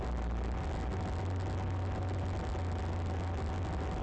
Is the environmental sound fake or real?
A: real